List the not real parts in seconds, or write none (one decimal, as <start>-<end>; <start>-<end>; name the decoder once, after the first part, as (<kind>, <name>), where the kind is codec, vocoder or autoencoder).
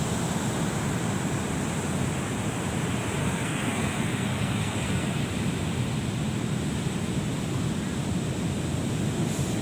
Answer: 3.2-5.2 (codec, SNAC)